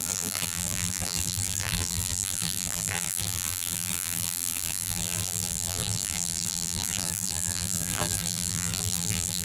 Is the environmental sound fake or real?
fake